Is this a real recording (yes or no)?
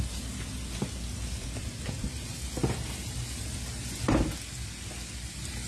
yes